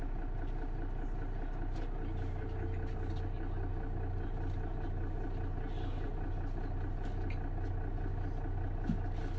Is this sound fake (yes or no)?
no